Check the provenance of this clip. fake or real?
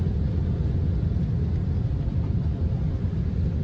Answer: real